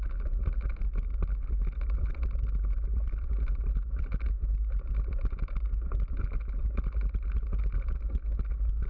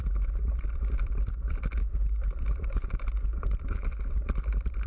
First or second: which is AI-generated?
second